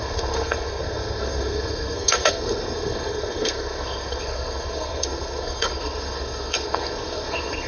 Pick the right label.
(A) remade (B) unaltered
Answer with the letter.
A